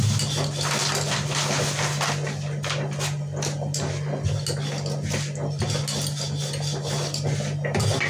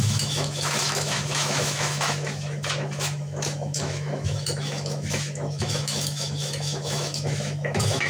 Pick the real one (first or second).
first